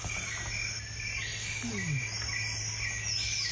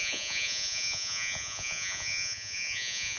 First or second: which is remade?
second